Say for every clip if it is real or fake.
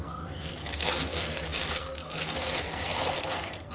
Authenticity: fake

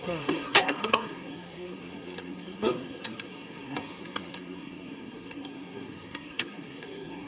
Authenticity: fake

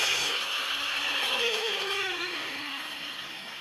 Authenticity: fake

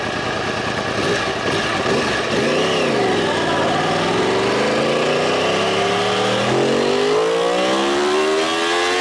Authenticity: real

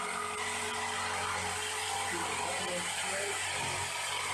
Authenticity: real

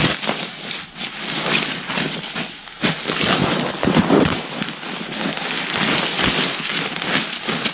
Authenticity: real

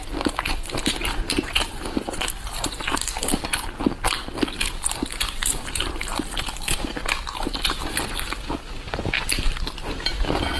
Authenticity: real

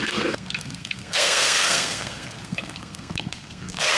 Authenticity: fake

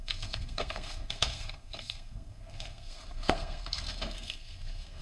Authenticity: fake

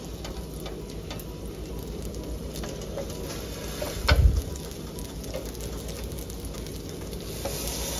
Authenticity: real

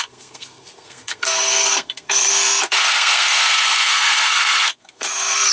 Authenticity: fake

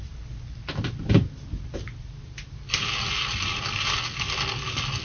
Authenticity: real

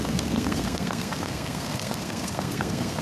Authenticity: fake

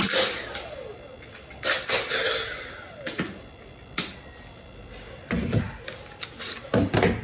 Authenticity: real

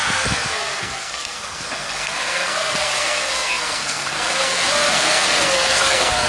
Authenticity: fake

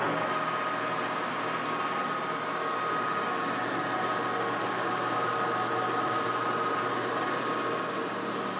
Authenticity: real